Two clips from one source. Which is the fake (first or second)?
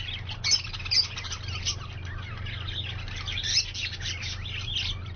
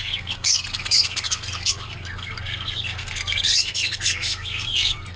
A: second